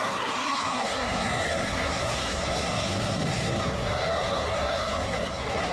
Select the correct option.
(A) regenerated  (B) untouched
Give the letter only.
A